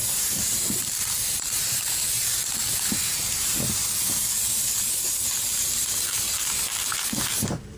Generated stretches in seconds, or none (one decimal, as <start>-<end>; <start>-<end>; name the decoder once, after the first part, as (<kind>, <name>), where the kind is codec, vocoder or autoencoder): 0.0-4.7 (vocoder, BigVGAN v2); 5.5-6.9